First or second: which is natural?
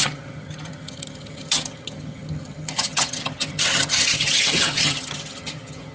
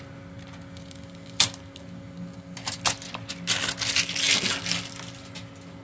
second